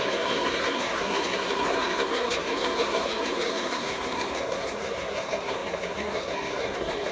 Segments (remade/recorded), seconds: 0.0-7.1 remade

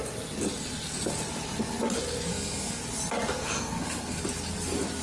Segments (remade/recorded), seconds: 0.0-2.3 recorded; 2.3-2.8 remade; 2.8-3.3 recorded; 3.3-4.2 remade; 4.2-5.0 recorded

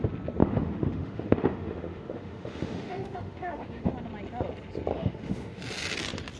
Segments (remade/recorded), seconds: 0.0-0.4 recorded; 0.4-3.9 remade; 3.9-4.9 recorded; 4.9-5.6 remade; 5.6-6.4 recorded

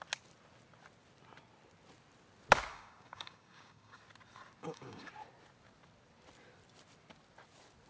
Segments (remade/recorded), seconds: 0.0-2.7 recorded; 2.7-4.0 remade; 4.0-4.6 recorded; 4.6-5.1 remade; 5.1-7.9 recorded

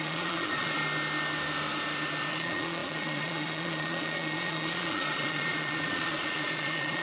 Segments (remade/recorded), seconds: 0.0-0.8 remade; 0.8-2.3 recorded; 2.3-7.0 remade

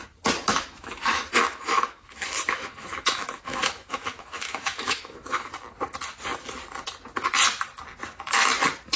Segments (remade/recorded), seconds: 0.0-0.5 recorded; 0.5-5.5 remade; 5.5-9.0 recorded

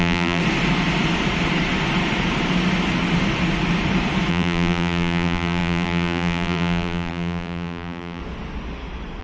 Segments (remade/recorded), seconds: 0.0-0.4 remade; 0.4-4.3 recorded; 4.3-8.2 remade; 8.2-9.2 recorded

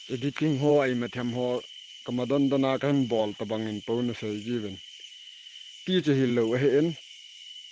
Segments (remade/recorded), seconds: 0.0-0.7 remade; 0.7-2.8 recorded; 2.8-3.2 remade; 3.2-5.1 recorded; 5.1-6.3 remade; 6.3-7.0 recorded; 7.0-7.7 remade